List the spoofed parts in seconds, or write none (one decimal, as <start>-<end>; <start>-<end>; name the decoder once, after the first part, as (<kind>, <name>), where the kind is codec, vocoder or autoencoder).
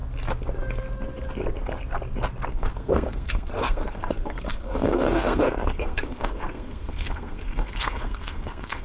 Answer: 2.5-8.8 (codec, SNAC)